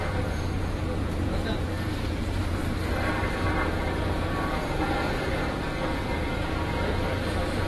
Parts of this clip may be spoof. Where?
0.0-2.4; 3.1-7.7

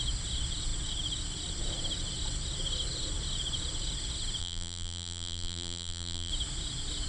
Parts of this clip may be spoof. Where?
4.4-6.3